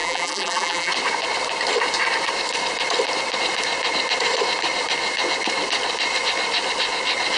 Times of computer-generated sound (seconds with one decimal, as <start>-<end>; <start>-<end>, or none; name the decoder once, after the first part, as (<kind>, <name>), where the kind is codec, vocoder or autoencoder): 0.0-0.9 (vocoder, BigVGAN v2)

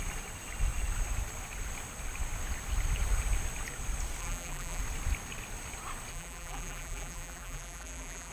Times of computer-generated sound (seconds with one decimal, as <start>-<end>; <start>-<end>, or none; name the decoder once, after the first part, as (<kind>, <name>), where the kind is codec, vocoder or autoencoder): 4.2-4.8 (vocoder, BigVGAN v2); 6.1-8.3

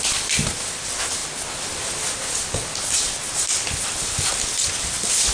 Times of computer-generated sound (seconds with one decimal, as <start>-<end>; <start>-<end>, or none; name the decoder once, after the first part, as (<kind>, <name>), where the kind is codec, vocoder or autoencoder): none

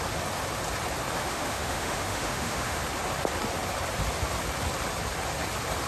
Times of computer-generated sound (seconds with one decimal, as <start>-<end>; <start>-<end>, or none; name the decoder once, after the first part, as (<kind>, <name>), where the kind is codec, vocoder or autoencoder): 1.2-2.8 (autoencoder, DAC-VAE)